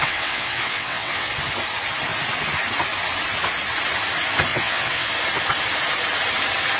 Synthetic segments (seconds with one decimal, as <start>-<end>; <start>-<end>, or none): 0.0-1.3; 4.5-5.1